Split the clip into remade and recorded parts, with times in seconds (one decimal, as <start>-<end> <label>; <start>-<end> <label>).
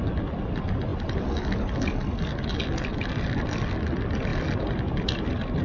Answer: 0.0-0.9 remade; 0.9-3.2 recorded; 3.2-5.6 remade